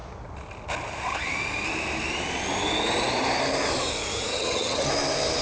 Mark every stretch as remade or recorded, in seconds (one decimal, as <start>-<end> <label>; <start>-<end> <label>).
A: 0.0-4.3 recorded; 4.3-4.9 remade; 4.9-5.4 recorded